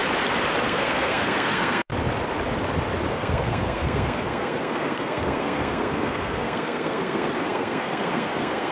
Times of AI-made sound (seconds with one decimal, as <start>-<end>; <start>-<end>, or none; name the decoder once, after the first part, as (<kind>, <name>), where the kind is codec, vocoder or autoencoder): 0.6-1.9 (codec, SNAC); 3.1-8.7